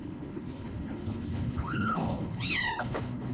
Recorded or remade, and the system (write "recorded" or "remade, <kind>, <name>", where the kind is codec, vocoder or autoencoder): remade, codec, HILCodec